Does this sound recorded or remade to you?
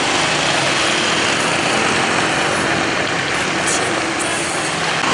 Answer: recorded